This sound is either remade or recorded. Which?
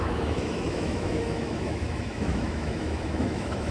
remade